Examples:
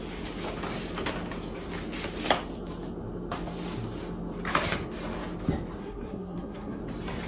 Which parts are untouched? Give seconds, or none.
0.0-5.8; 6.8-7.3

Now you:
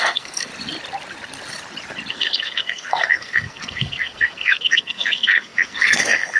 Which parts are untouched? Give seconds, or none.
0.5-2.1

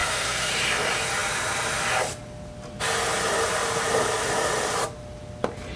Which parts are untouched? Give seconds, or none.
0.5-5.8

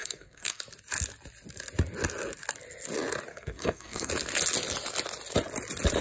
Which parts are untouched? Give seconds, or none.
0.6-3.3; 4.1-6.0

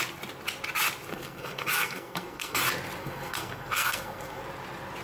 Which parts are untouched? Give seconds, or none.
0.0-1.1; 2.6-3.0; 4.4-5.0

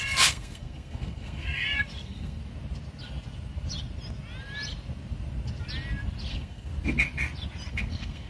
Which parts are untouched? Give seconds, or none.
2.4-6.3; 6.7-7.7

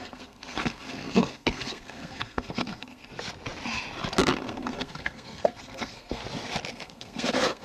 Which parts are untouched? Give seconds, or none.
3.1-4.2; 6.2-6.7

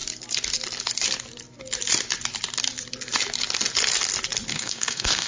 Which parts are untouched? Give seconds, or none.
0.0-4.5